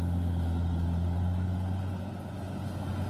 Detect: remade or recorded recorded